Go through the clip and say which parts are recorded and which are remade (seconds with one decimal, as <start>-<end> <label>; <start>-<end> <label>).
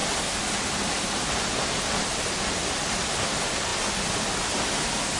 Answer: 0.0-5.2 recorded